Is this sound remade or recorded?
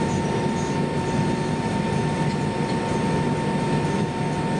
recorded